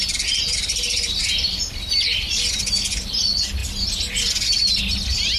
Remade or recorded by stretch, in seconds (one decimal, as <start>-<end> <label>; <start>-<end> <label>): 0.0-2.5 remade; 2.5-5.4 recorded